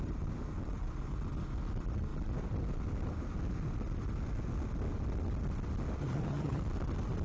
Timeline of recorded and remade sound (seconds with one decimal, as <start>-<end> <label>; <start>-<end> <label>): 0.0-6.0 recorded; 6.0-6.6 remade; 6.6-7.2 recorded